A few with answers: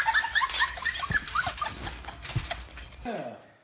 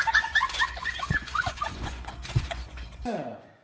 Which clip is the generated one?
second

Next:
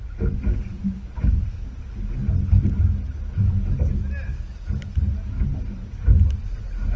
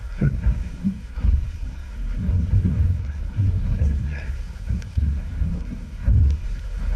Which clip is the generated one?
second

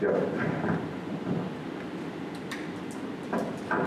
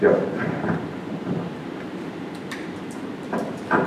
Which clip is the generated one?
second